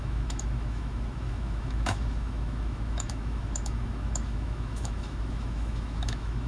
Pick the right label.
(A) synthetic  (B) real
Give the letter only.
A